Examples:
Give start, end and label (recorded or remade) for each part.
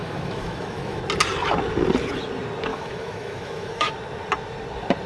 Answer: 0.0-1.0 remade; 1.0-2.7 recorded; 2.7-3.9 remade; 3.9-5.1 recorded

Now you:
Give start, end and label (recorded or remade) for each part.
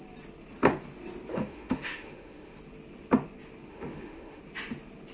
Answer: 0.0-1.3 recorded; 1.3-2.6 remade; 2.6-3.7 recorded; 3.7-4.4 remade; 4.4-5.1 recorded